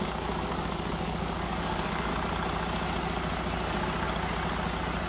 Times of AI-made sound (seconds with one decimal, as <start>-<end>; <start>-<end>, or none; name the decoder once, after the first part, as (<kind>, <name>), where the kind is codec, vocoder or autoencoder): 0.0-2.1 (codec, DAC)